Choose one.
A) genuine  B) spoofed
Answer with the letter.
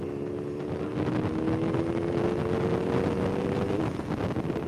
A